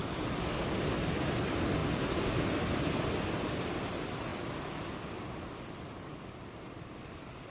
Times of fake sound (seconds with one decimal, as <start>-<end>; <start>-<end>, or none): none